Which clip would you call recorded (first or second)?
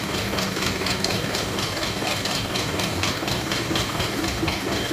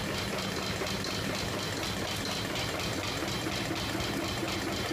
second